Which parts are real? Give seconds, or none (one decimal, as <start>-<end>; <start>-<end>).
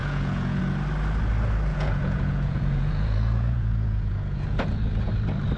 0.6-1.7; 5.1-5.6